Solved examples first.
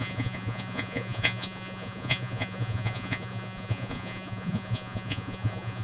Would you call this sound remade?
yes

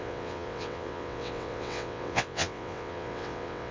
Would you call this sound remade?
yes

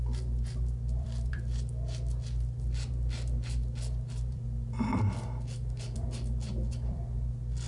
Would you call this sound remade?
yes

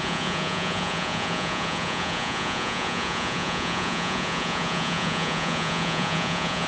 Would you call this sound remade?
yes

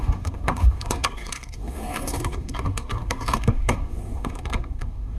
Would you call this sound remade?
yes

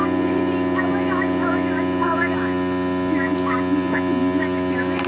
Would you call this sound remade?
no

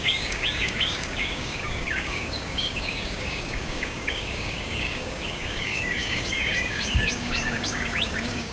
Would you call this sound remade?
yes